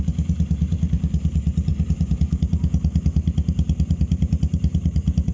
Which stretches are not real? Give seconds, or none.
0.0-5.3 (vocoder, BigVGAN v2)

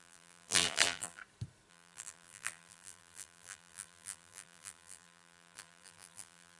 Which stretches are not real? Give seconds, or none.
0.0-1.2 (vocoder, BigVGAN v2); 1.7-6.6

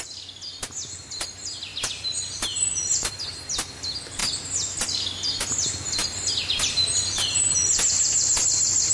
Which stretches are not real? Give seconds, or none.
none

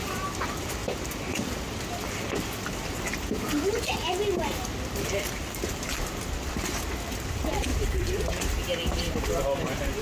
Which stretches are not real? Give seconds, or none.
0.8-2.9 (vocoder, BigVGAN v2); 7.7-8.6

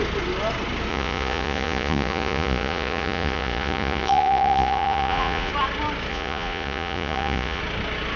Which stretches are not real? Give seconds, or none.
0.9-5.5 (vocoder, Vocos); 6.1-7.6

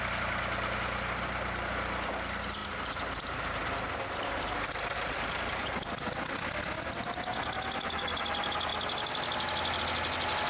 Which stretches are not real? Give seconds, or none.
none

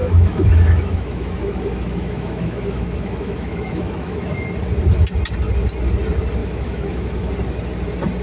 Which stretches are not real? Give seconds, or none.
0.0-4.5 (autoencoder, DAC-VAE); 6.4-7.3